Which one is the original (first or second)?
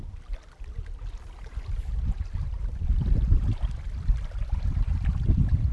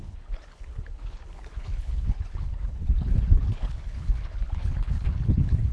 first